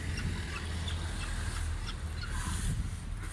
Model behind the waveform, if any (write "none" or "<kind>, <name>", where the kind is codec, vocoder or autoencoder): none